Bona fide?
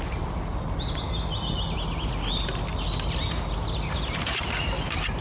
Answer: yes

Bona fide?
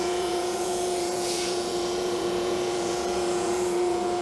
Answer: no